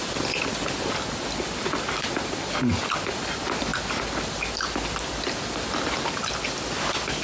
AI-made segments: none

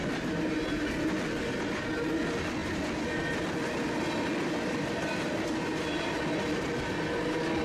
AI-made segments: none

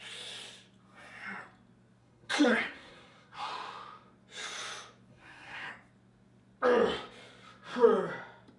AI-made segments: 2.0-3.5 (codec, SNAC); 5.1-5.7

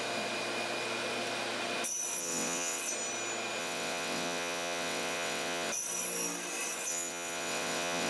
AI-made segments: 2.2-2.8 (vocoder, WaveNeXt); 3.6-5.7; 6.9-8.1

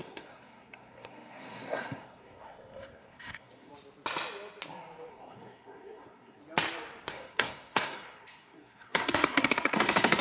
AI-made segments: 0.0-3.7 (codec, SNAC); 5.1-6.4; 7.1-10.2

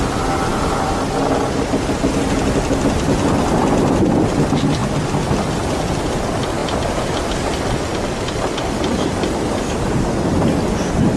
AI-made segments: none

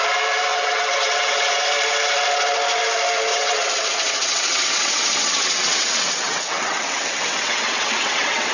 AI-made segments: 0.5-1.6 (vocoder, WaveNeXt); 3.3-8.5